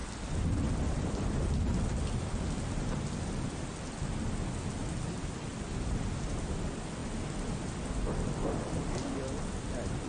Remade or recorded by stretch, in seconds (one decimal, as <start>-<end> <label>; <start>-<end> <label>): 0.0-10.1 recorded